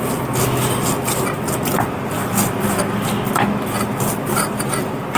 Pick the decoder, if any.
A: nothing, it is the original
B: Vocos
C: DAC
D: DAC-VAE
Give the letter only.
A